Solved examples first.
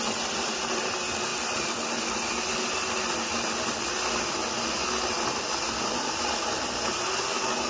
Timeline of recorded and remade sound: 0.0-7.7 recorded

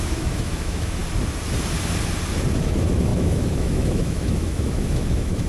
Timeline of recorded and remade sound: 0.0-1.0 remade; 1.0-2.6 recorded; 2.6-5.5 remade

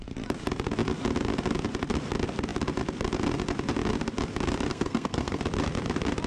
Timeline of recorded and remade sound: 0.0-4.7 recorded; 4.7-5.4 remade; 5.4-6.3 recorded

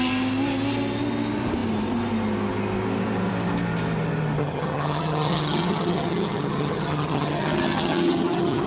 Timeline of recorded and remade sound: 0.0-4.4 recorded; 4.4-8.7 remade

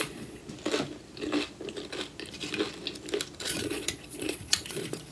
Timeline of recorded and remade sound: 0.0-0.4 remade; 0.4-3.5 recorded; 3.5-5.1 remade

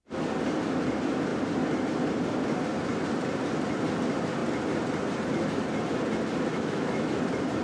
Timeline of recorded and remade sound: 0.0-6.5 recorded; 6.5-7.1 remade; 7.1-7.6 recorded

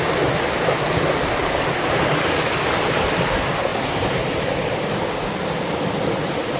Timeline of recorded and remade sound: 0.0-1.4 recorded; 1.4-2.2 remade; 2.2-6.6 recorded

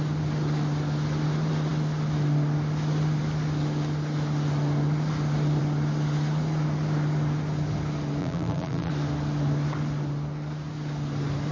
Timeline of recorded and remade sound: 0.0-8.2 recorded; 8.2-8.9 remade; 8.9-11.5 recorded